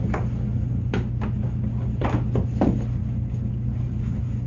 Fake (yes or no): no